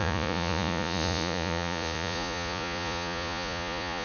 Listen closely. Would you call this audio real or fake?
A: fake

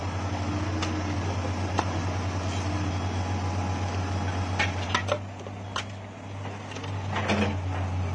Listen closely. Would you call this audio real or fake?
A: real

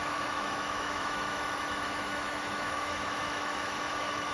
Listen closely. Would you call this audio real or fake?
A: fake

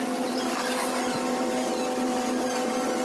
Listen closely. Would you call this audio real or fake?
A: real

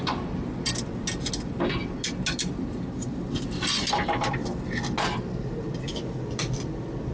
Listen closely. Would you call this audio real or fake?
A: real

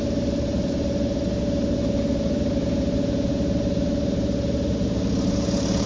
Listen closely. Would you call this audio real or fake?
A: fake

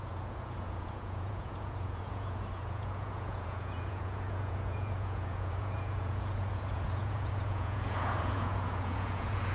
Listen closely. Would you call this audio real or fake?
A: fake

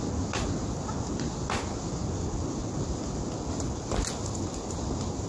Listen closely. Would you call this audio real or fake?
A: real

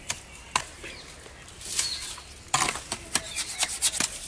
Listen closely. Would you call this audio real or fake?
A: real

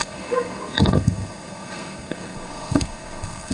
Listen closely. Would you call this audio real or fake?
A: fake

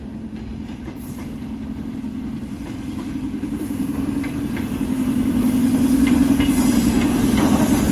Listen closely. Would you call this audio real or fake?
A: fake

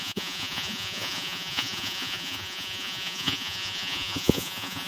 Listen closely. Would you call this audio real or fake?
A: fake